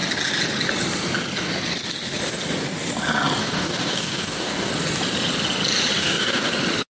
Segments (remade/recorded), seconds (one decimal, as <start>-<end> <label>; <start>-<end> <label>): 0.0-3.4 recorded; 3.4-4.7 remade; 4.7-6.0 recorded; 6.0-6.5 remade; 6.5-7.0 recorded